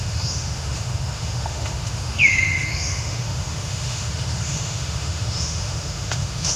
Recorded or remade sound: remade